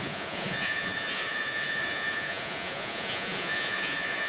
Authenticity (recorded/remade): remade